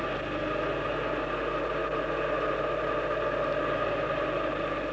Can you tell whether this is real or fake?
real